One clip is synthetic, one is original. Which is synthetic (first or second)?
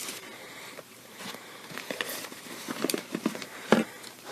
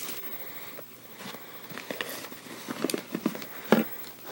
first